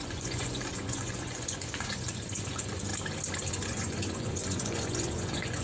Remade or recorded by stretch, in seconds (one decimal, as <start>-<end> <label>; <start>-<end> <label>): 0.0-2.9 remade; 2.9-3.5 recorded; 3.5-5.6 remade